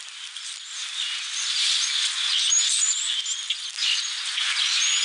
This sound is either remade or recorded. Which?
recorded